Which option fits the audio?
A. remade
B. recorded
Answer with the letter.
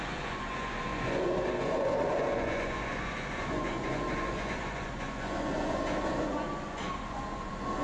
A